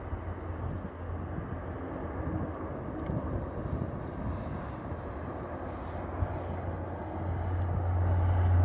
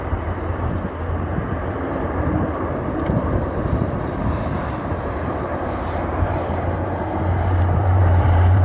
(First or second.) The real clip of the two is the first